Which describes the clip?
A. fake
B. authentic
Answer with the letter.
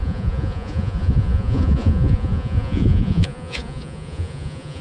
A